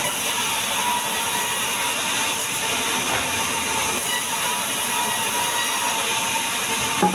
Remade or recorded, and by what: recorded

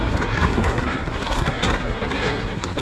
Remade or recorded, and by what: remade, codec, SNAC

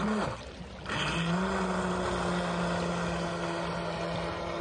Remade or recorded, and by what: recorded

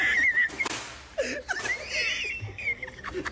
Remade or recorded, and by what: recorded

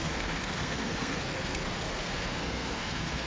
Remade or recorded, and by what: remade, codec, SNAC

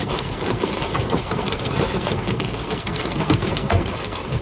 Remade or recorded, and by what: remade, codec, SNAC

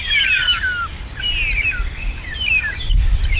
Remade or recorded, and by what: recorded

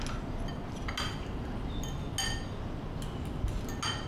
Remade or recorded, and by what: recorded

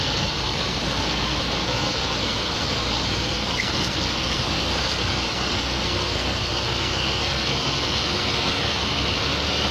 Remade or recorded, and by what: remade, codec, SNAC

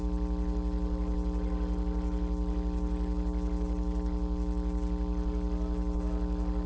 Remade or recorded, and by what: recorded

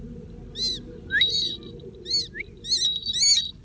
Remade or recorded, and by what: recorded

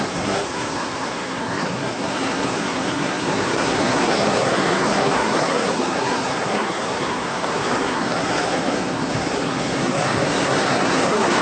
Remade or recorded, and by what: remade, codec, SNAC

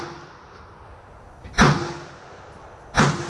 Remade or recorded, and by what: recorded